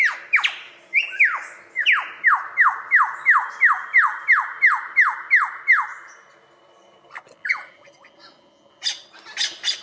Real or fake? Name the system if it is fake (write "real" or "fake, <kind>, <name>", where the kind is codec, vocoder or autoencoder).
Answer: real